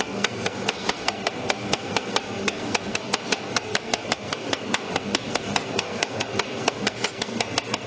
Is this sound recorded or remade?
remade